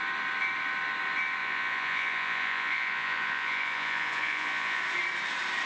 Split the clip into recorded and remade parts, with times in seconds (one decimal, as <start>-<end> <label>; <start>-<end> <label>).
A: 0.0-1.4 recorded; 1.4-4.8 remade; 4.8-5.7 recorded